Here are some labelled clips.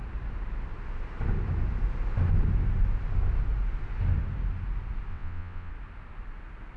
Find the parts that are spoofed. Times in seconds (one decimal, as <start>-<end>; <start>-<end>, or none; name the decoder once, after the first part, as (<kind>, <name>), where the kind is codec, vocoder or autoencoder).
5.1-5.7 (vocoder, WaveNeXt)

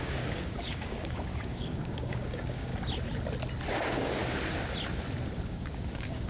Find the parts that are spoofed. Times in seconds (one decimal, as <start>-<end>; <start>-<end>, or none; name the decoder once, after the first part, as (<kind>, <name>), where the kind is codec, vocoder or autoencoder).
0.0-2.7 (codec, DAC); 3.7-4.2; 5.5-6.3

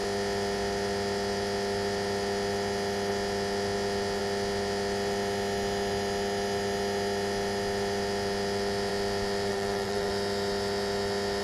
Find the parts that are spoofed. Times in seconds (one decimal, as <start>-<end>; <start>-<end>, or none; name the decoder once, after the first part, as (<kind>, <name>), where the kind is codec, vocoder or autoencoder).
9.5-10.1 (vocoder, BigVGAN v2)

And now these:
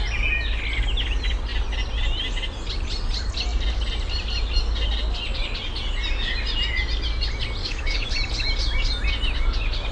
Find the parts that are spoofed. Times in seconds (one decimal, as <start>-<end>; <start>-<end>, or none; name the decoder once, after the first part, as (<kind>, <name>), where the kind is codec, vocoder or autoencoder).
7.6-8.1 (codec, DAC)